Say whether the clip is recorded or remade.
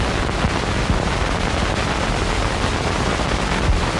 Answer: recorded